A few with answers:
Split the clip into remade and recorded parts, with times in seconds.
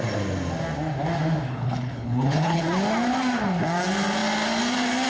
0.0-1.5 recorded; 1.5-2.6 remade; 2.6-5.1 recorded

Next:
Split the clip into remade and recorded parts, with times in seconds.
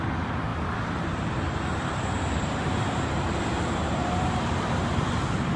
0.0-0.5 recorded; 0.5-1.1 remade; 1.1-1.7 recorded; 1.7-5.1 remade; 5.1-5.6 recorded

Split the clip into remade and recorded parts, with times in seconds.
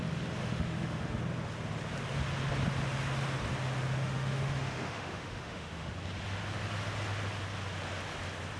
0.0-0.4 recorded; 0.4-1.2 remade; 1.2-4.0 recorded; 4.0-5.9 remade; 5.9-8.6 recorded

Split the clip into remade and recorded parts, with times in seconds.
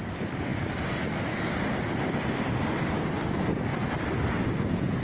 0.0-5.0 recorded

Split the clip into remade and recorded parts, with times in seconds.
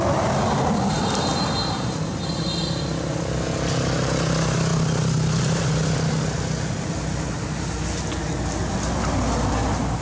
0.0-10.0 recorded